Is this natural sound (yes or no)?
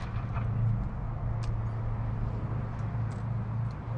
yes